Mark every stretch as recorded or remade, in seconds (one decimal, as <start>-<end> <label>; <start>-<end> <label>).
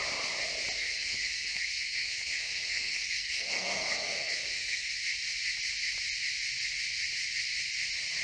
0.0-0.8 recorded; 0.8-4.9 remade; 4.9-8.2 recorded